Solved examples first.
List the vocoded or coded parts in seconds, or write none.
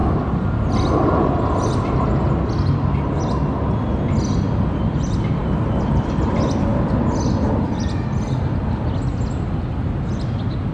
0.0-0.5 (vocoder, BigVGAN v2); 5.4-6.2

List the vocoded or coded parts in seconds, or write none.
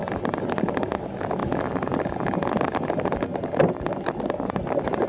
none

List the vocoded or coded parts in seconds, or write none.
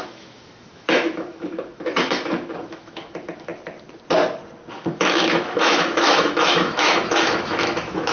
0.0-3.5 (autoencoder, DAC-VAE); 4.7-8.1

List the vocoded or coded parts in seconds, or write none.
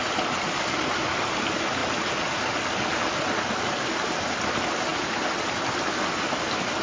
none